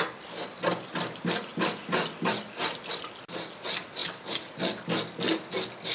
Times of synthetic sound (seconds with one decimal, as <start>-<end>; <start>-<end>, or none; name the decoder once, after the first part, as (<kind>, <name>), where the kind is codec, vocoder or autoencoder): 4.0-4.6 (vocoder, BigVGAN v2)